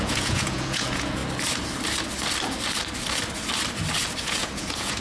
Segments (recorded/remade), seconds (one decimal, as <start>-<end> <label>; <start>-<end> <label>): 0.0-1.2 remade; 1.2-4.2 recorded; 4.2-5.0 remade